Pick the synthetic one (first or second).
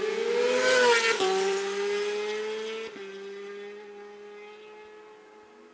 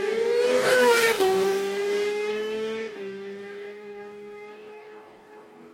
second